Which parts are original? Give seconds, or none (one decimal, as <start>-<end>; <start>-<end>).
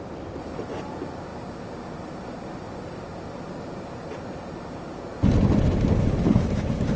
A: 0.0-7.0